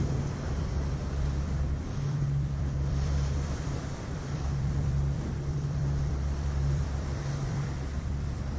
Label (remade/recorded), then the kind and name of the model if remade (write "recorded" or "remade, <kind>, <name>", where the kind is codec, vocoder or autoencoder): remade, vocoder, BigVGAN v2